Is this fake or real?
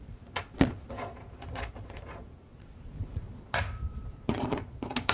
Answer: fake